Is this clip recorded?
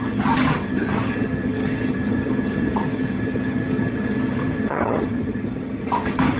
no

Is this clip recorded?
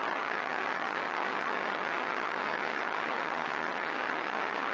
no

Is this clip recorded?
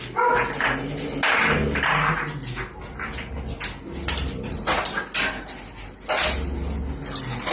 yes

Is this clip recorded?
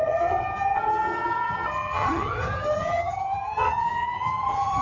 no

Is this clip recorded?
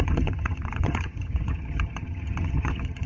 no